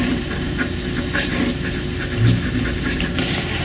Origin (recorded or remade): recorded